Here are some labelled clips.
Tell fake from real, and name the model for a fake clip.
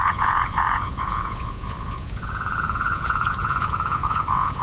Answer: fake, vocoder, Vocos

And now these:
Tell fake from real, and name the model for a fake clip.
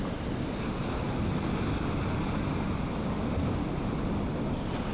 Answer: real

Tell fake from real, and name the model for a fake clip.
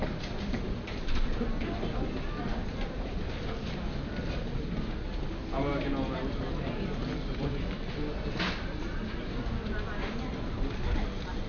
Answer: real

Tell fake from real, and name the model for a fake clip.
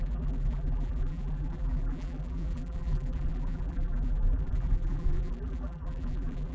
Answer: fake, vocoder, BigVGAN v2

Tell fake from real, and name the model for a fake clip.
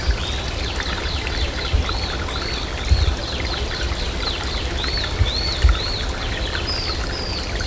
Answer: real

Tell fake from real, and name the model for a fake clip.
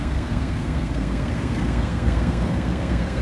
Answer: fake, codec, SNAC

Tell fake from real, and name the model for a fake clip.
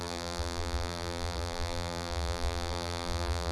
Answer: fake, vocoder, BigVGAN v2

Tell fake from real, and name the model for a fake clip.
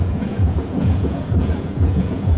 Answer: fake, vocoder, Vocos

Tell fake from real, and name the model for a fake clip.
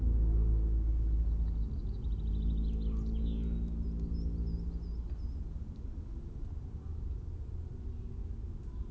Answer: real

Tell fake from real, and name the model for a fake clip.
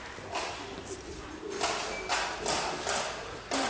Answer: real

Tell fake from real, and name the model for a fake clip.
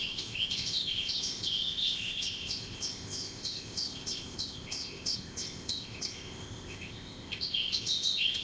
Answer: fake, codec, ZipCodec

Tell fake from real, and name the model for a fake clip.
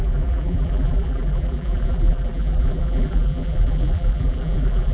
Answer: fake, vocoder, BigVGAN v2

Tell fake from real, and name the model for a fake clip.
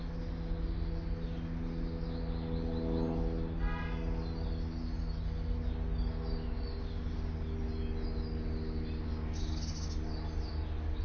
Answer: real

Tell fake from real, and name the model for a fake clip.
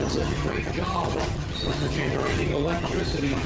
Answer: fake, vocoder, HiFi-GAN